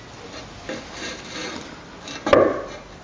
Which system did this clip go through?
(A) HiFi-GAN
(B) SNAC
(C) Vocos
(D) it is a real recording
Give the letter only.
D